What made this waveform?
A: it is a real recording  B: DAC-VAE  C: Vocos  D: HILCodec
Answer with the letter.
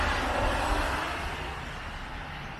A